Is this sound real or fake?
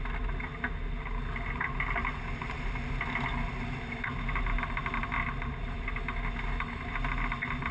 real